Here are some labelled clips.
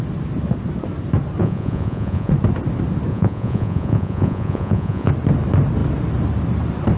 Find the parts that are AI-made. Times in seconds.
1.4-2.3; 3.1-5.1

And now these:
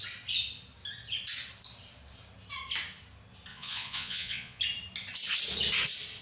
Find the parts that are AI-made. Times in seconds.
3.5-4.6

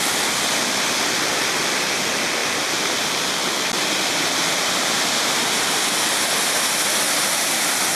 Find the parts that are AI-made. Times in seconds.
2.4-3.1

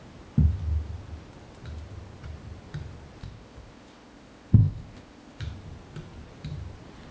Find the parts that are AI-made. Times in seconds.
3.2-5.4

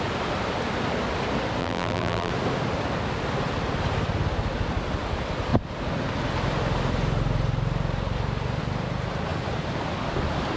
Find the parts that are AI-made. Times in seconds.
1.6-2.3